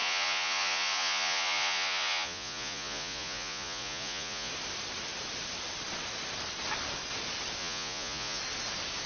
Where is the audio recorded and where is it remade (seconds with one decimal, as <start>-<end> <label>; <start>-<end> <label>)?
0.0-4.5 remade; 4.5-7.6 recorded; 7.6-8.4 remade; 8.4-9.1 recorded